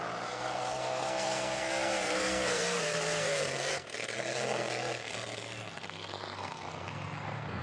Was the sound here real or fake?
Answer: fake